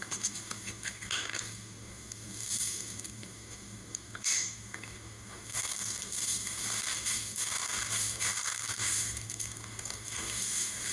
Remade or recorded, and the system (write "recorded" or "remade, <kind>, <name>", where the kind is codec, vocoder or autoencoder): remade, codec, DAC